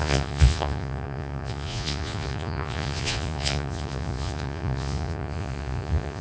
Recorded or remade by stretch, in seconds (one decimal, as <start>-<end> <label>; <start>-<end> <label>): 0.0-6.2 remade